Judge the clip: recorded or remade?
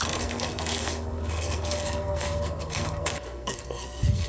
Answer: remade